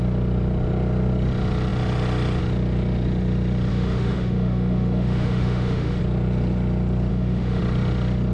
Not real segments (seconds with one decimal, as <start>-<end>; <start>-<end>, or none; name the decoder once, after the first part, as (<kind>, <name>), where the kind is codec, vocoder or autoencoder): 3.7-6.0 (autoencoder, DAC-VAE); 7.1-7.6